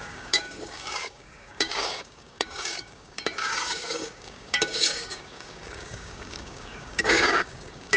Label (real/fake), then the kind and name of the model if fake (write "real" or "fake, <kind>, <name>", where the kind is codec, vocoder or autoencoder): fake, codec, DAC